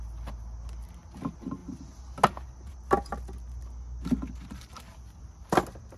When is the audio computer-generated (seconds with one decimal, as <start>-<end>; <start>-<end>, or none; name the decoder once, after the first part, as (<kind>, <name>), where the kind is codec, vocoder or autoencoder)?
none

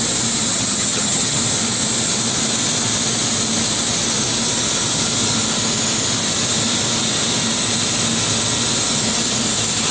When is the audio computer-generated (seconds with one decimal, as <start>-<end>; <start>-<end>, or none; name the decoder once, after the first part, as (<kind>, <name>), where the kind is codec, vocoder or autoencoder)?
0.5-1.4 (vocoder, HiFi-GAN)

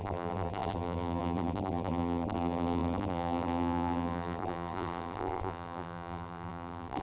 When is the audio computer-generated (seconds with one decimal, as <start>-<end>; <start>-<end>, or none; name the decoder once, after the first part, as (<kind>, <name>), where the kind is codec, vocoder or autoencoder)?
0.0-7.0 (vocoder, BigVGAN v2)